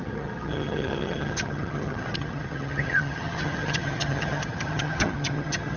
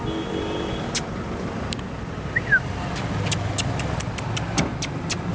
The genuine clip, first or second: second